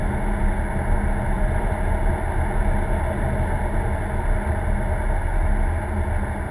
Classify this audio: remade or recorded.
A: recorded